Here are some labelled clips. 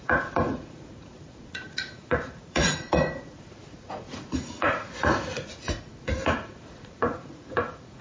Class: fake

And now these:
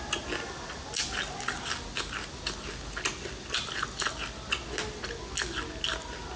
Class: real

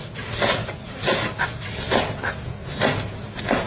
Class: real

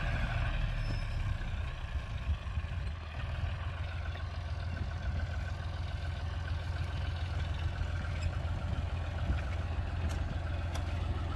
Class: real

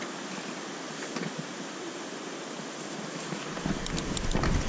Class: real